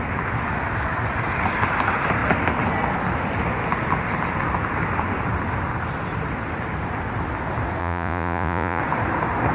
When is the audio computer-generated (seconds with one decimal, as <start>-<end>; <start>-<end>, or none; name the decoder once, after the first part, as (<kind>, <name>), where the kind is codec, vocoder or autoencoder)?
7.8-8.8 (vocoder, Vocos)